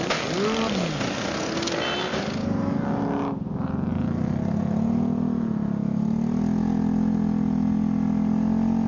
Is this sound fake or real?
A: real